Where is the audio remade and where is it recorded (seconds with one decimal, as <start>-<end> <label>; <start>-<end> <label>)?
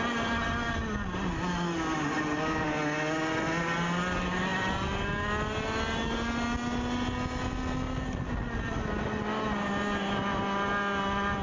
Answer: 0.0-11.4 recorded